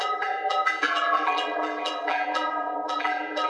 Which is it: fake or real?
fake